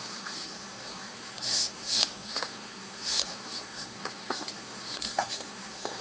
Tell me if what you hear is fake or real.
fake